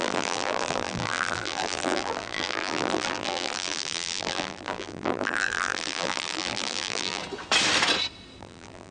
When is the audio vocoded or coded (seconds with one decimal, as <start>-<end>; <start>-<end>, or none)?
0.0-7.2; 8.4-8.9